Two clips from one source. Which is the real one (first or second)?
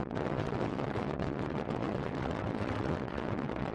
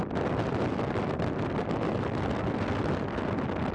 second